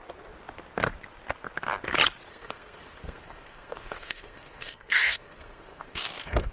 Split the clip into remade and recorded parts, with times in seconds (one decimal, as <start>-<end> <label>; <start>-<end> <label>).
0.0-2.3 recorded; 2.3-6.5 remade